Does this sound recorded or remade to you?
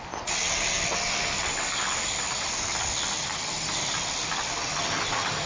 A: recorded